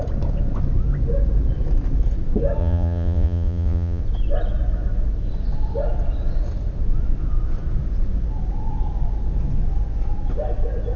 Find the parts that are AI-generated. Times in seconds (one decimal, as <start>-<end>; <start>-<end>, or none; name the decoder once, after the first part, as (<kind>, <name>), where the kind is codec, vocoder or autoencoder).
2.6-4.0 (vocoder, Vocos)